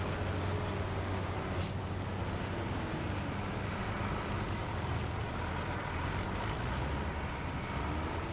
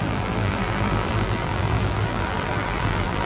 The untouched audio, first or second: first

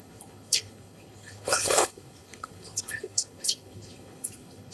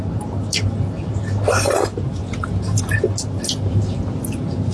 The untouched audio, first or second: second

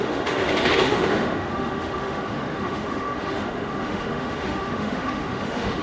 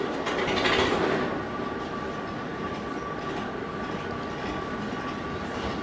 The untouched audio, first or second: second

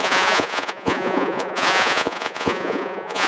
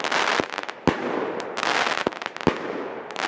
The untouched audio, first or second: second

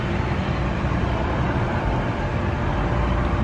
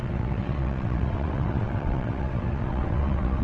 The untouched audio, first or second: first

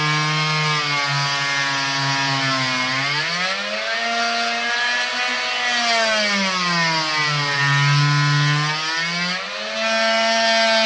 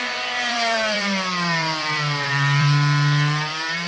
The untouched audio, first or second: first